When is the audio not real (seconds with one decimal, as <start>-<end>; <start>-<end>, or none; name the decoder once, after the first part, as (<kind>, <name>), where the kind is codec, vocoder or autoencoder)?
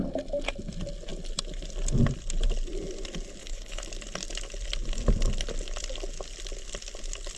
3.4-3.9 (codec, HILCodec)